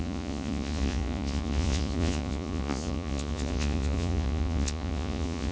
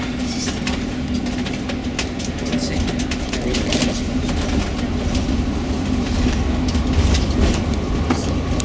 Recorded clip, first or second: second